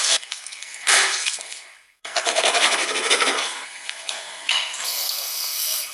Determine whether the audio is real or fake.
fake